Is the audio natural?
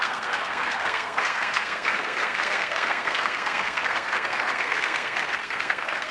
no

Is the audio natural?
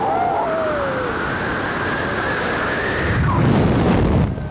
yes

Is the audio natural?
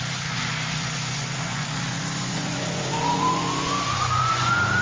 no